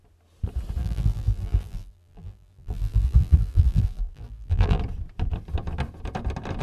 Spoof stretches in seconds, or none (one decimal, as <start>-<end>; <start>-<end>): 0.8-4.8